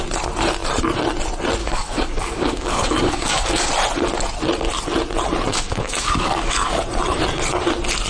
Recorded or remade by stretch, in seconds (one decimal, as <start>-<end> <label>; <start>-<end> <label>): 0.0-1.6 recorded; 1.6-3.7 remade; 3.7-5.5 recorded; 5.5-6.8 remade; 6.8-8.1 recorded